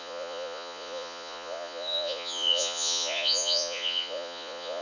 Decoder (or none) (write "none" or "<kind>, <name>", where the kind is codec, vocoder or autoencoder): vocoder, Vocos